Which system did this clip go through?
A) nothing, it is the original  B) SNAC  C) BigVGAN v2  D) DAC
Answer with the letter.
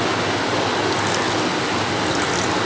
A